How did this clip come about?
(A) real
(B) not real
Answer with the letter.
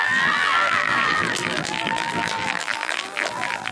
B